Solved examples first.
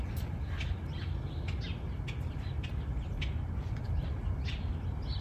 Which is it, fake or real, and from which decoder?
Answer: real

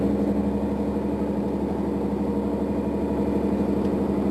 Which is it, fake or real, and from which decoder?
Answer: real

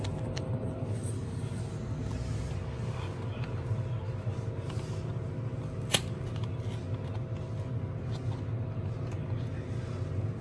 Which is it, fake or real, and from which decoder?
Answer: real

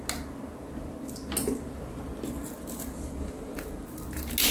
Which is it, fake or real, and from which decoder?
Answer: real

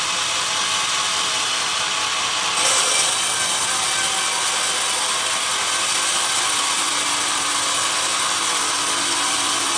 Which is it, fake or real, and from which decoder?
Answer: real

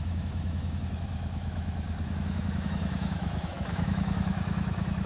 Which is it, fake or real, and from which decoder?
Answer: fake, autoencoder, DAC-VAE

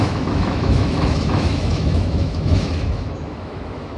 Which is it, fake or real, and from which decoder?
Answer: fake, autoencoder, DAC-VAE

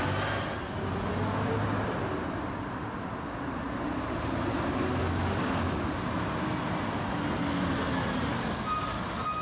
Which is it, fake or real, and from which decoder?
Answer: real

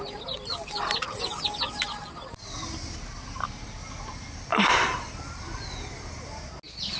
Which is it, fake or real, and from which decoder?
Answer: real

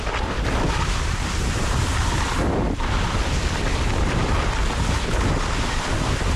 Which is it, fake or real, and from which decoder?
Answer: real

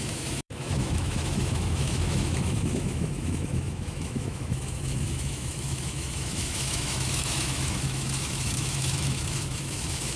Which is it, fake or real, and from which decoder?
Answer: fake, autoencoder, DAC-VAE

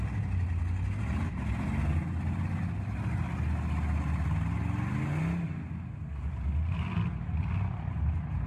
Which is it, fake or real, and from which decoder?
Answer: real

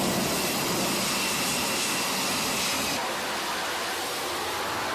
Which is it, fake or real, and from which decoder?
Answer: real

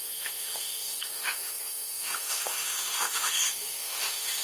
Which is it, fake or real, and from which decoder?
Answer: fake, autoencoder, DAC-VAE